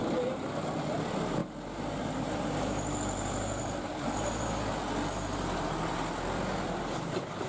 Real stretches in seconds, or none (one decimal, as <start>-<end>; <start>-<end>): 0.0-7.5